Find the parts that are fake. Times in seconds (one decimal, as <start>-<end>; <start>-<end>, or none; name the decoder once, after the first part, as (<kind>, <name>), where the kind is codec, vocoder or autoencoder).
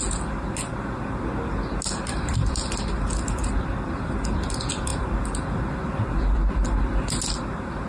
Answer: none